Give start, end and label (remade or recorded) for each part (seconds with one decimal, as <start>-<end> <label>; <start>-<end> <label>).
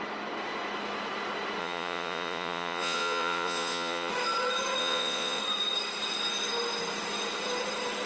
0.0-1.6 recorded; 1.6-4.1 remade; 4.1-4.8 recorded; 4.8-5.4 remade; 5.4-8.1 recorded